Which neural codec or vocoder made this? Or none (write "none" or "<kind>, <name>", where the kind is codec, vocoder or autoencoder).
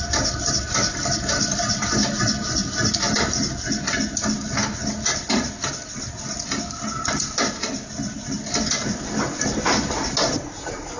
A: none